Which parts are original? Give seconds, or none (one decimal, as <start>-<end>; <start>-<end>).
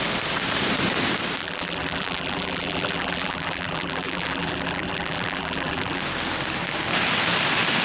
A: 0.0-1.4; 6.0-7.8